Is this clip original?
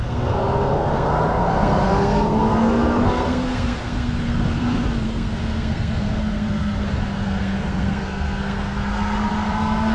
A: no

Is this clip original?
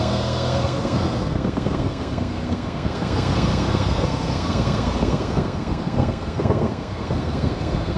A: no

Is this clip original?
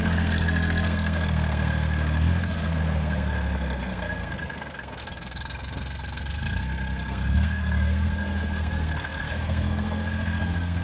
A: no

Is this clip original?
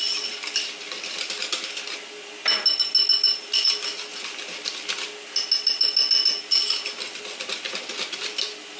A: yes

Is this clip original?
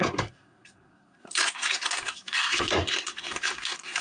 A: no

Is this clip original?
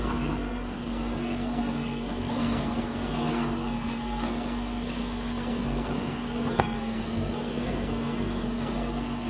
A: no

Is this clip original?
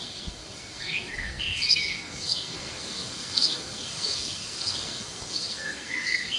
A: no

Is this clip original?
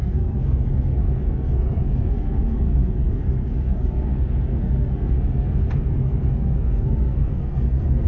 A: no